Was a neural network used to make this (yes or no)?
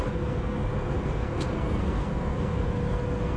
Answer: yes